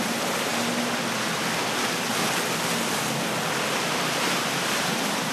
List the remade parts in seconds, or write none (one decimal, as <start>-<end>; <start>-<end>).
0.0-0.5; 3.7-5.3